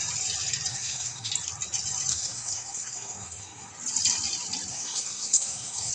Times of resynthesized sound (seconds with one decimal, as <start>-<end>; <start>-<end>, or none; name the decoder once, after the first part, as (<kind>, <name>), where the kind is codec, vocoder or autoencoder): 0.7-1.3 (codec, SNAC); 2.1-3.7; 4.7-5.9